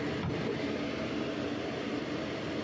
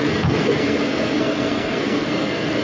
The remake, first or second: second